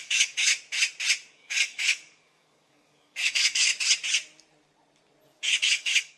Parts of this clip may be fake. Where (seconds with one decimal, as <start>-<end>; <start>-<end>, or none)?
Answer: 0.0-0.5; 1.3-3.7; 5.4-6.2